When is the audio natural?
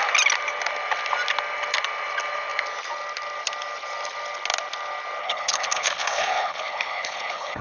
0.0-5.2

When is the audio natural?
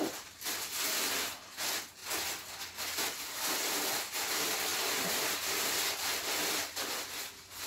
0.0-4.7; 5.6-6.1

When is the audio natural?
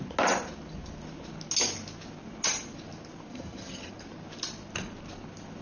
0.0-3.3; 3.9-5.6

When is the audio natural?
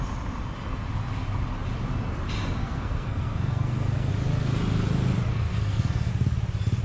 0.0-2.6; 4.1-5.3; 6.1-6.8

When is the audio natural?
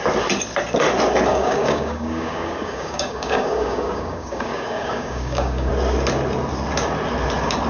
0.0-1.3; 5.7-7.7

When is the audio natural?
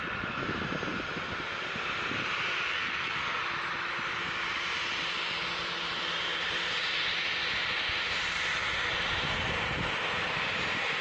0.0-2.7; 3.4-11.0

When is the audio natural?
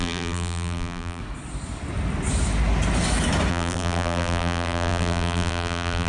1.2-3.5